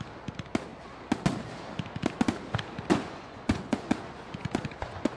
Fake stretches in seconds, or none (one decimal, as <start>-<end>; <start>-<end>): 2.9-5.2